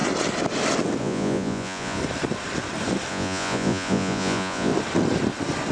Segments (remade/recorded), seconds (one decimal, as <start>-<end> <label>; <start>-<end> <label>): 0.0-1.0 recorded; 1.0-2.0 remade; 2.0-3.1 recorded; 3.1-4.7 remade; 4.7-5.7 recorded